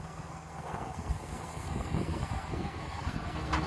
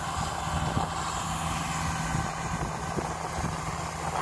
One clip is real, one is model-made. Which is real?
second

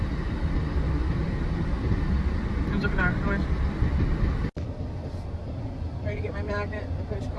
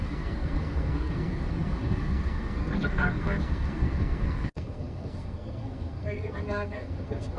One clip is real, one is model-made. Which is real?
first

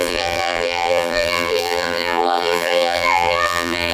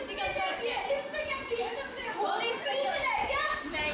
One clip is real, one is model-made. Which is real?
second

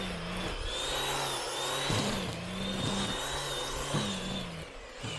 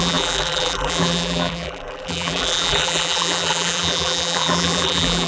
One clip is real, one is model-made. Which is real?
first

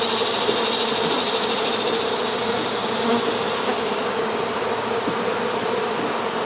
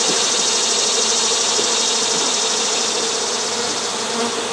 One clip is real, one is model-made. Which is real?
second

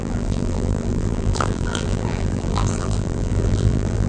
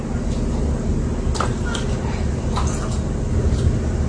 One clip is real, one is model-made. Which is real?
second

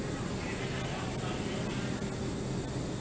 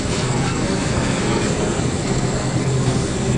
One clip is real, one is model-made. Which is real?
first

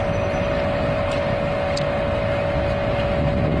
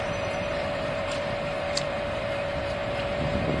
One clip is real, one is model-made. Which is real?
first